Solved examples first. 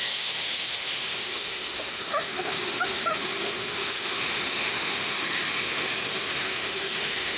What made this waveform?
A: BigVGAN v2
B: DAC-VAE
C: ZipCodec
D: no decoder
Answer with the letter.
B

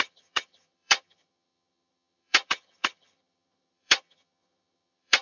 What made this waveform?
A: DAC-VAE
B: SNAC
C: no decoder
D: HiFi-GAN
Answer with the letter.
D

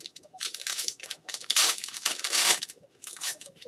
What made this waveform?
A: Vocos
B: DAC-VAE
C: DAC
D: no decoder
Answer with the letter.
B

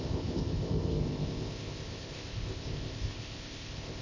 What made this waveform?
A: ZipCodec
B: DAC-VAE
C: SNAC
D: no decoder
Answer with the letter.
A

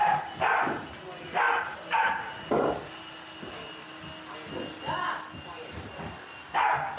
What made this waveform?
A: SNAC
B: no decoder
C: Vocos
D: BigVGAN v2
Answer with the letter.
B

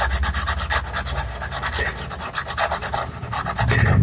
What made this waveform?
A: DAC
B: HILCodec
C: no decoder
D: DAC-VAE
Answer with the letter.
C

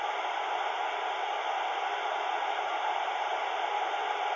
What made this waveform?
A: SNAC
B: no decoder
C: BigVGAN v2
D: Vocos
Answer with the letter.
B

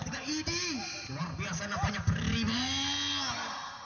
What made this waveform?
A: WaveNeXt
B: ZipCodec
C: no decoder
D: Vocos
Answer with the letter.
C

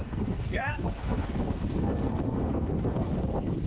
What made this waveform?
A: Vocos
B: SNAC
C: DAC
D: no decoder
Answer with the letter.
B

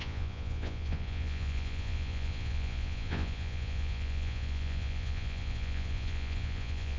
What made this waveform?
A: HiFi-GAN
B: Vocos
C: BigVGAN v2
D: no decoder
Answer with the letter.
B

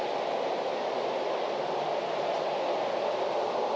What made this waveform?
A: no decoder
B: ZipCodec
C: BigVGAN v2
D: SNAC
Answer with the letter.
A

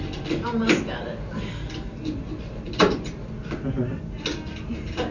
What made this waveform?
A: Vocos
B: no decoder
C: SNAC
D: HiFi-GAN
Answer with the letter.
B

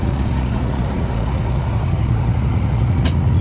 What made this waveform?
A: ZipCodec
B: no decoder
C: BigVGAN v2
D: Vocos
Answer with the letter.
D